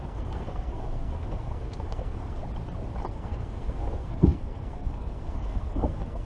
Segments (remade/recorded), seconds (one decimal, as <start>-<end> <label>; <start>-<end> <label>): 0.0-2.4 remade; 2.4-3.1 recorded; 3.1-6.3 remade